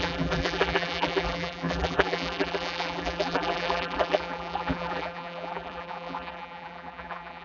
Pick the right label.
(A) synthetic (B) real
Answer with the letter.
A